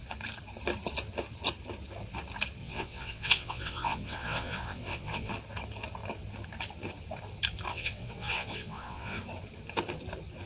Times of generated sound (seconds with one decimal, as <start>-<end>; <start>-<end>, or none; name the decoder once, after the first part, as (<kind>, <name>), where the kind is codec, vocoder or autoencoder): 2.6-5.3 (vocoder, WaveNeXt); 7.7-9.2